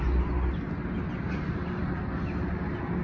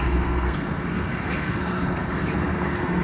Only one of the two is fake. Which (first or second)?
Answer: second